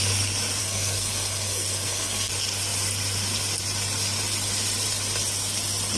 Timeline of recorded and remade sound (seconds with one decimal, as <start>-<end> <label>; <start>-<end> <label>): 0.0-0.6 recorded; 0.6-2.3 remade; 2.3-6.0 recorded